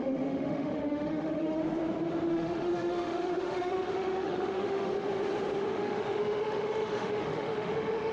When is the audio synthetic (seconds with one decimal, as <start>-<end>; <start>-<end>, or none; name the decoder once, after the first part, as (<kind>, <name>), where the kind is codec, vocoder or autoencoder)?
0.0-1.6 (autoencoder, DAC-VAE); 2.3-4.9; 5.7-8.1